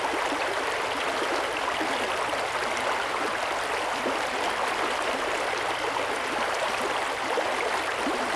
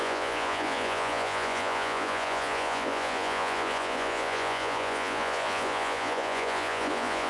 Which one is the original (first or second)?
first